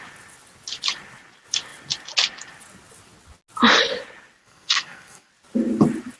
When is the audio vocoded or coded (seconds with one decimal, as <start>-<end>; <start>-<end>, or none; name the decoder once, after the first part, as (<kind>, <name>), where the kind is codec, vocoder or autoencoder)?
4.4-5.3 (codec, SNAC)